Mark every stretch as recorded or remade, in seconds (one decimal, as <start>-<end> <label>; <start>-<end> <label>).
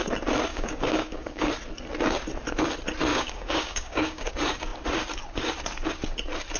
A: 0.0-0.5 recorded; 0.5-1.5 remade; 1.5-3.1 recorded; 3.1-4.3 remade; 4.3-6.6 recorded